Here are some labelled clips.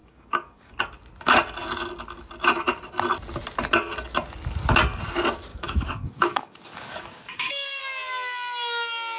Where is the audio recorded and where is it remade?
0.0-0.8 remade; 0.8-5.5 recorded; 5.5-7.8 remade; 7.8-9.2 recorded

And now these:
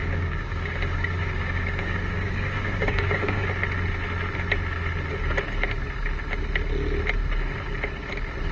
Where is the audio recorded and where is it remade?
0.0-3.5 remade; 3.5-8.5 recorded

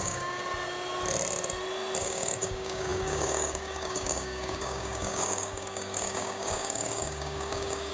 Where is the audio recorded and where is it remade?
0.0-0.4 remade; 0.4-2.0 recorded; 2.0-7.9 remade

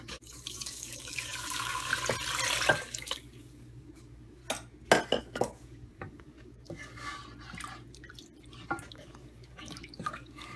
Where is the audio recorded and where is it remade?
0.0-1.9 remade; 1.9-2.7 recorded; 2.7-4.4 remade; 4.4-5.2 recorded; 5.2-7.2 remade; 7.2-8.9 recorded; 8.9-10.6 remade